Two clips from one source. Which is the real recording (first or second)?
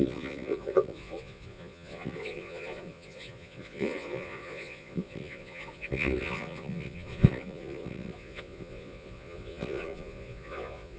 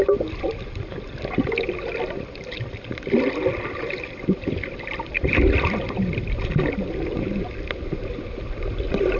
second